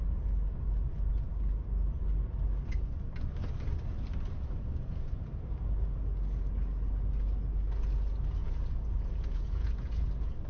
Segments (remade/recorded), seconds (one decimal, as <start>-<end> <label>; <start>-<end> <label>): 0.0-8.4 recorded; 8.4-10.0 remade; 10.0-10.5 recorded